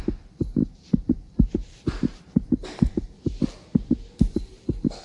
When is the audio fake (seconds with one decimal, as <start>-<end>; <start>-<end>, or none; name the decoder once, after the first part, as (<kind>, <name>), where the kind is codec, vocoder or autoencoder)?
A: 0.6-3.1 (vocoder, BigVGAN v2)